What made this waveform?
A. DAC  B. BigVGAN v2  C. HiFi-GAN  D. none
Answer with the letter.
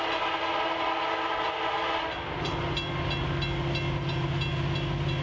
D